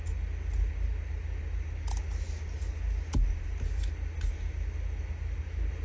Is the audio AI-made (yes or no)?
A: no